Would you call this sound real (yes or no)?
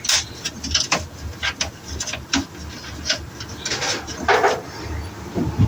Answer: yes